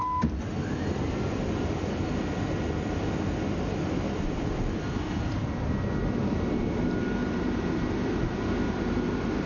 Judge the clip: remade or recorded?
recorded